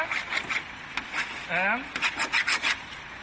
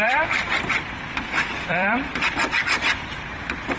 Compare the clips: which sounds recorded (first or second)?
first